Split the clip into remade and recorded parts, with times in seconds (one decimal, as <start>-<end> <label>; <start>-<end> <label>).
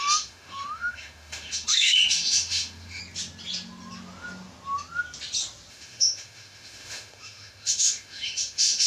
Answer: 0.0-3.0 remade; 3.0-5.7 recorded; 5.7-8.9 remade